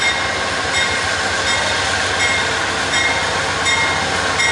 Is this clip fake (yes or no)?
no